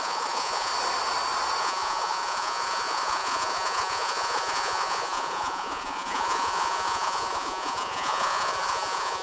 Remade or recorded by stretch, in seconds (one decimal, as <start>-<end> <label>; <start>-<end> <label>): 0.0-0.7 remade; 0.7-1.6 recorded; 1.6-9.2 remade